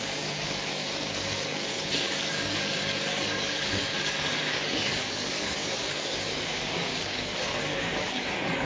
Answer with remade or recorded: remade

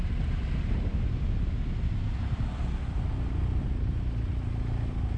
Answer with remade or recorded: recorded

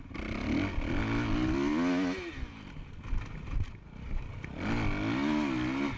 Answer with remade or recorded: recorded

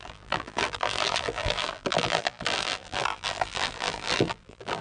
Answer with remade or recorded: remade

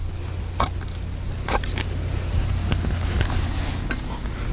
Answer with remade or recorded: recorded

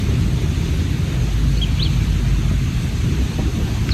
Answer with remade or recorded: recorded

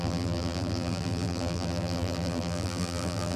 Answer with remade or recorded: remade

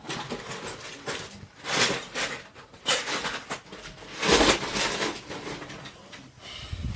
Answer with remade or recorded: recorded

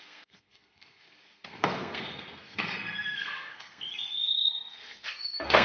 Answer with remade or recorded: remade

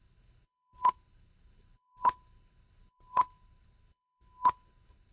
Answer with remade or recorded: remade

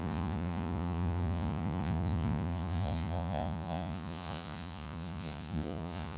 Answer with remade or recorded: remade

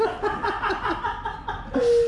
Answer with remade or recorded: recorded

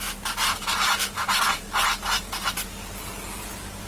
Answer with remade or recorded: recorded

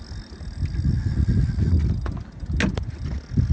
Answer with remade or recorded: recorded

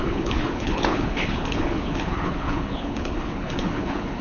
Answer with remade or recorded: remade